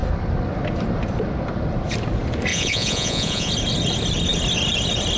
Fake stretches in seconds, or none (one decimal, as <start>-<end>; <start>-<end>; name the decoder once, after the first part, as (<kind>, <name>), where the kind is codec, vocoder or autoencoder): 2.5-3.5 (vocoder, Vocos)